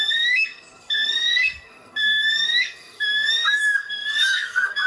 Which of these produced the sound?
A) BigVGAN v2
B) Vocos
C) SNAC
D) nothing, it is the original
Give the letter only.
C